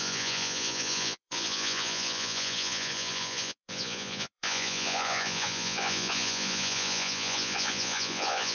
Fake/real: fake